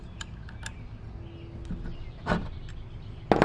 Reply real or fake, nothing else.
real